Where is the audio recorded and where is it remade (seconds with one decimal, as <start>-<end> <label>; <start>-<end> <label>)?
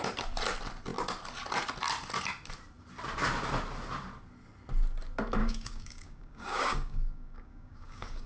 0.0-5.4 recorded; 5.4-8.3 remade